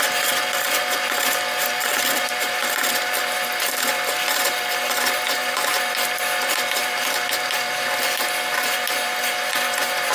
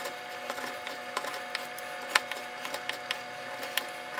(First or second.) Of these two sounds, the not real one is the first